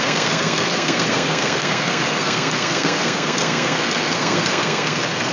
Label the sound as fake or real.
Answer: fake